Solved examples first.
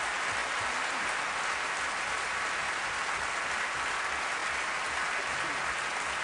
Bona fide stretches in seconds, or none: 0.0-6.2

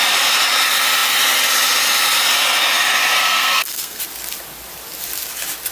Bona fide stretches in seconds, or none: 0.0-3.2; 4.0-5.7